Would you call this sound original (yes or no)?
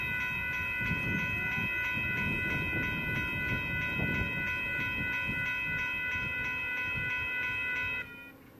yes